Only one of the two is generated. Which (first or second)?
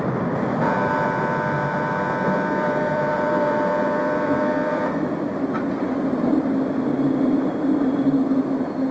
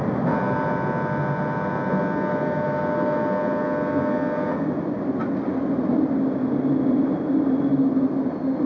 first